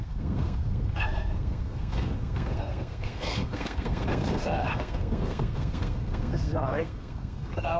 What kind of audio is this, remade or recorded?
remade